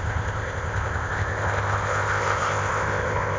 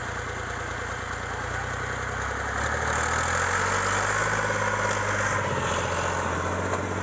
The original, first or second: second